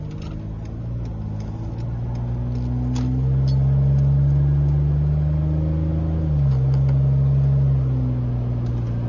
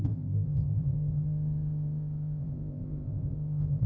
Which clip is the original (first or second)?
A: first